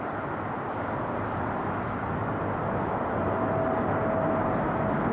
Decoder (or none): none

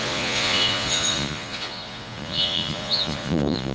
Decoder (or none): vocoder, Vocos